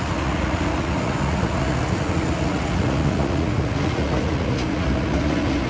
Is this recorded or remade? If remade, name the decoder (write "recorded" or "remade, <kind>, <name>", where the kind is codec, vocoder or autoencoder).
remade, vocoder, Vocos